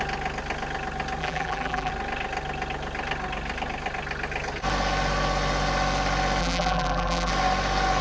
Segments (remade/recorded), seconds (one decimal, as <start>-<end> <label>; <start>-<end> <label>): 0.0-1.2 recorded; 1.2-1.9 remade; 1.9-6.4 recorded; 6.4-7.3 remade; 7.3-8.0 recorded